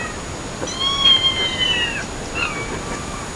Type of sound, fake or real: real